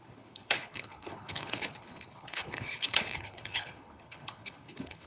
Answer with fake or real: fake